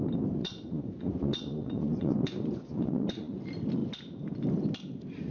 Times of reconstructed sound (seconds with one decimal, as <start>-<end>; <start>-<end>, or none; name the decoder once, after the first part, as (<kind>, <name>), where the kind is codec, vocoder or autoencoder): 0.4-3.4 (vocoder, Vocos)